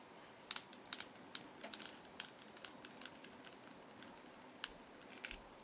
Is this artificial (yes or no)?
no